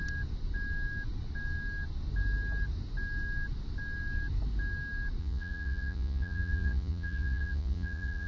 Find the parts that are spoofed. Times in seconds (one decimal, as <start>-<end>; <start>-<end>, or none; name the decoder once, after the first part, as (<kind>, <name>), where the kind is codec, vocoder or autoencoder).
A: 5.2-8.3 (vocoder, Vocos)